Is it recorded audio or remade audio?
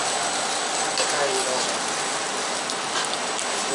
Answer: recorded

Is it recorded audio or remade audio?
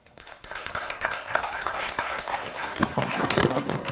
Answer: remade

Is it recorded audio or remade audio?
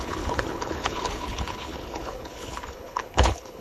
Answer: remade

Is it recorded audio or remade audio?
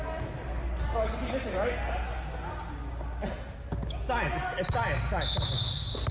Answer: recorded